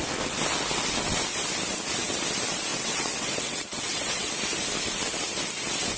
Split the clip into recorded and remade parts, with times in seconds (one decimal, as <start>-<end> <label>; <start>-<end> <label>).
0.0-2.7 recorded; 2.7-4.3 remade; 4.3-6.0 recorded